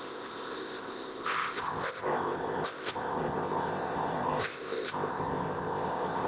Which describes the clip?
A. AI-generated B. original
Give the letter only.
A